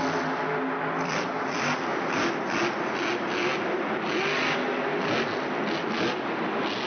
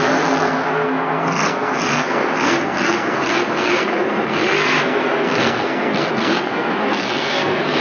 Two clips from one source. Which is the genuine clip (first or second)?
first